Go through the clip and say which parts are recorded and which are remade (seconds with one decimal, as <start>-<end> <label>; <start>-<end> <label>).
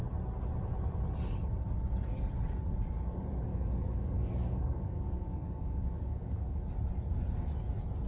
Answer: 0.0-3.5 recorded; 3.5-6.6 remade; 6.6-8.1 recorded